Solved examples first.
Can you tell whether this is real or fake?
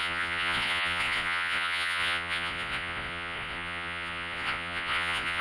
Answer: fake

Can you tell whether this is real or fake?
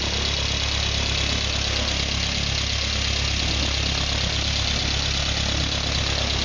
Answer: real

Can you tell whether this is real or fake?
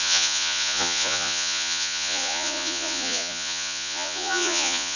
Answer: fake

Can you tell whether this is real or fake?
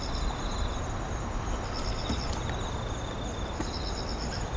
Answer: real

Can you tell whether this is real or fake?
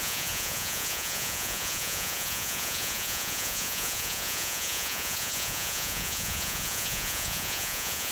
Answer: fake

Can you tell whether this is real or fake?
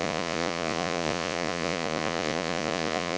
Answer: fake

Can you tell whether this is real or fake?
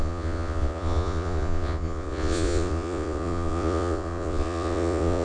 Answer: fake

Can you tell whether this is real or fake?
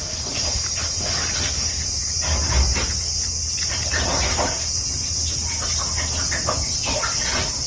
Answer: real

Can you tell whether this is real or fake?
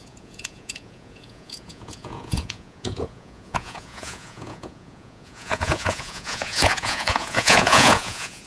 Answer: fake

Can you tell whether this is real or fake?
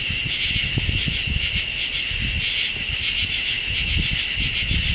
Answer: real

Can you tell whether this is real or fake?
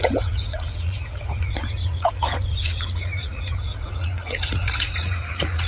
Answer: fake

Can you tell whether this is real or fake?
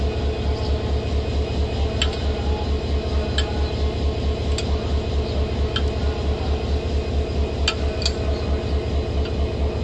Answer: real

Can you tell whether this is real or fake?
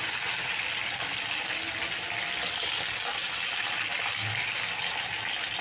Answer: real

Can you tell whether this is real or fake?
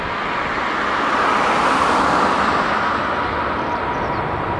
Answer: real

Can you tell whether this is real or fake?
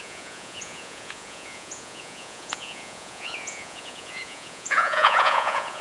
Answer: fake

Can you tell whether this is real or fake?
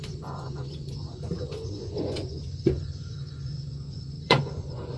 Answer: fake